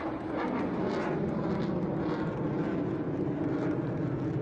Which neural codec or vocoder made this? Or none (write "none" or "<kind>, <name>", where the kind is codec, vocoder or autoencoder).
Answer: none